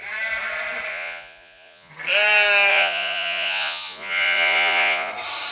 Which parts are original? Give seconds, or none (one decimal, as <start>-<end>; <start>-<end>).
0.0-0.9; 1.9-2.7; 5.1-5.5